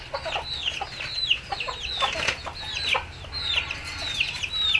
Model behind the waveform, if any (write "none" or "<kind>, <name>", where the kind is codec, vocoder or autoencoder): none